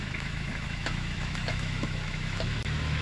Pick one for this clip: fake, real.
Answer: fake